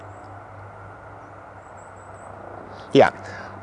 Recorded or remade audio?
recorded